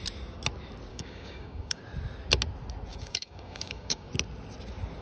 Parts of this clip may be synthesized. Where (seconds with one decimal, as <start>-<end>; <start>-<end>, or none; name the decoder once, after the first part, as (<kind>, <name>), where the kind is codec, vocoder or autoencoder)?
0.9-1.8 (codec, DAC); 2.9-4.1